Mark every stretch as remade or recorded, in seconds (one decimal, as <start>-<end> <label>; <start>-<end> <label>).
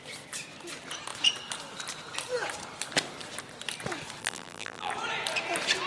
0.0-4.2 recorded; 4.2-4.9 remade; 4.9-5.9 recorded